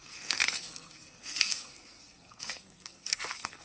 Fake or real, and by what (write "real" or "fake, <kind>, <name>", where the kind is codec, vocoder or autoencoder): fake, codec, SNAC